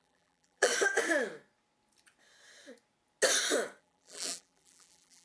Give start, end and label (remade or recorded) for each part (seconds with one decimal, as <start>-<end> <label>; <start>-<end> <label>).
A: 0.0-0.7 remade; 0.7-3.8 recorded; 3.8-5.2 remade